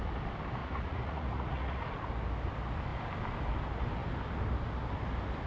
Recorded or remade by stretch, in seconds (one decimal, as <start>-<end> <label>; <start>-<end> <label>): 0.0-0.6 recorded; 0.6-2.1 remade; 2.1-5.5 recorded